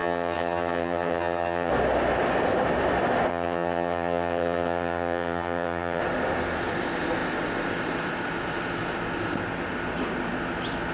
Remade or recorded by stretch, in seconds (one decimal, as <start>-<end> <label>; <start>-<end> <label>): 0.0-1.7 remade; 1.7-3.3 recorded; 3.3-6.0 remade; 6.0-10.9 recorded